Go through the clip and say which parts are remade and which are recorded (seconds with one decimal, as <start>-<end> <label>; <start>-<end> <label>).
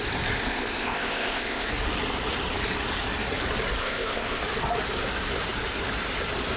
0.0-0.4 recorded; 0.4-1.7 remade; 1.7-3.8 recorded; 3.8-4.4 remade; 4.4-6.6 recorded